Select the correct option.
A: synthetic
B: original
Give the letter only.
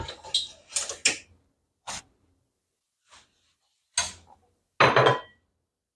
B